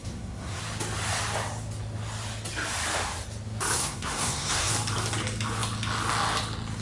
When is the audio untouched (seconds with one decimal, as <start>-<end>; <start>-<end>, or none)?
0.6-3.8; 4.7-6.8